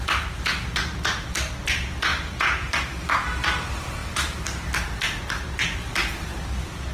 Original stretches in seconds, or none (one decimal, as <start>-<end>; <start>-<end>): 0.0-2.1; 2.7-6.9